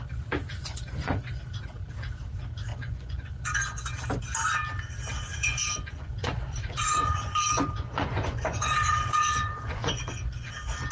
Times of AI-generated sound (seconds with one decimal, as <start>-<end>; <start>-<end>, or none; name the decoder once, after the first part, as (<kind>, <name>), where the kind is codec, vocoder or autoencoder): 0.6-1.4 (vocoder, Vocos); 2.7-3.9; 5.3-10.5